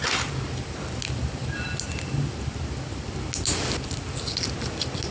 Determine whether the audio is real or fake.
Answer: real